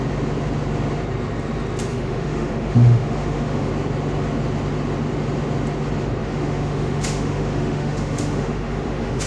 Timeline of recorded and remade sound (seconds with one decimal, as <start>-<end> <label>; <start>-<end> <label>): 0.0-1.9 recorded; 1.9-3.7 remade; 3.7-6.2 recorded; 6.2-9.3 remade

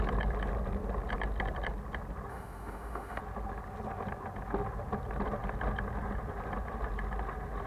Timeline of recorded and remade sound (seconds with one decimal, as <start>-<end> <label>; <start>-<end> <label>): 0.0-2.3 recorded; 2.3-3.2 remade; 3.2-7.7 recorded

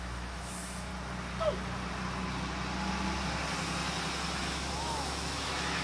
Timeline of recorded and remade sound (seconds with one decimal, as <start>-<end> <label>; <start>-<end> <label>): 0.0-0.9 remade; 0.9-4.4 recorded; 4.4-5.8 remade